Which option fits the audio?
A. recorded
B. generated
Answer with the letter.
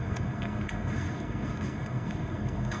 B